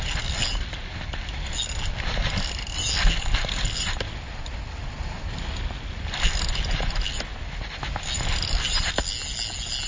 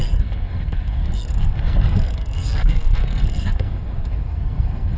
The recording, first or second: first